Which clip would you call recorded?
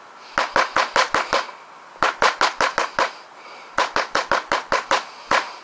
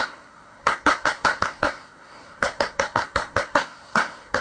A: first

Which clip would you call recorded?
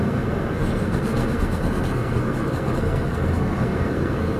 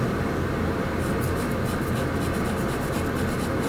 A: second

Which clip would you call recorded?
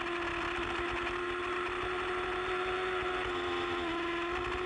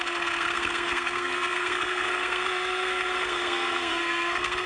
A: first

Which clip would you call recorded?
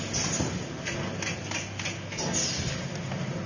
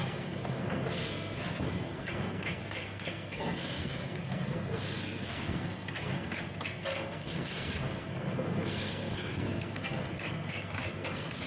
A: first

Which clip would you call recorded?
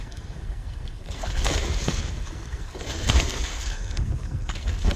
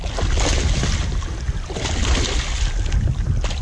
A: second